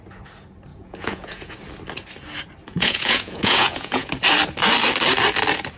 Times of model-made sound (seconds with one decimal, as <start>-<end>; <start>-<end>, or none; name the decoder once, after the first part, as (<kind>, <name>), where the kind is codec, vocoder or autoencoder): 0.7-1.5 (vocoder, Vocos); 2.7-4.1